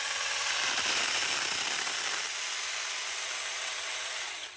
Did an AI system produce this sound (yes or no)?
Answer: no